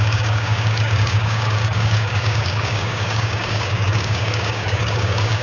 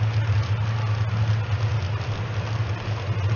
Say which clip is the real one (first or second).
second